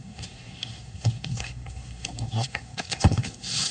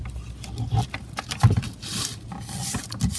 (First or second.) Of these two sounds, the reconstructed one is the first